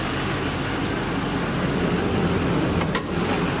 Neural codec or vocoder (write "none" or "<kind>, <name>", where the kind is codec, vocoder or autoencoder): none